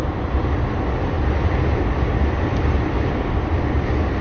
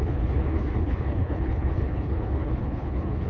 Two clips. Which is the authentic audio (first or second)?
first